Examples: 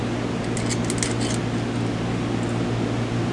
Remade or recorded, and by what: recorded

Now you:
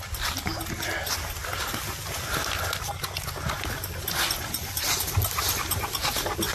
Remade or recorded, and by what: recorded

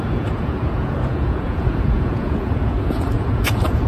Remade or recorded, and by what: remade, vocoder, Vocos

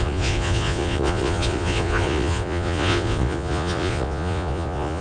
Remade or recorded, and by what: remade, vocoder, Vocos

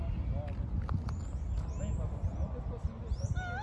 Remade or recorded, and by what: recorded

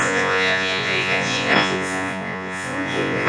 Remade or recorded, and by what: remade, vocoder, Vocos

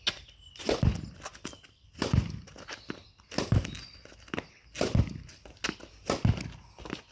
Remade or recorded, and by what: recorded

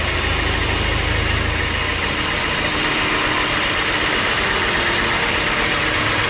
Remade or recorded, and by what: recorded